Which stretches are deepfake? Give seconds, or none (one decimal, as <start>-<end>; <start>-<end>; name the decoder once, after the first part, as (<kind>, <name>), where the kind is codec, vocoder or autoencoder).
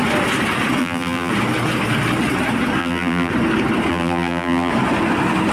0.8-1.3 (vocoder, BigVGAN v2); 2.8-3.3; 3.9-4.7